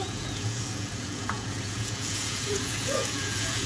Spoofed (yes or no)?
yes